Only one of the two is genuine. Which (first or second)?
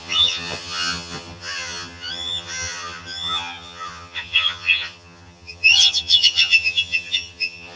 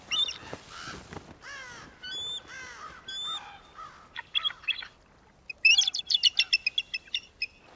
second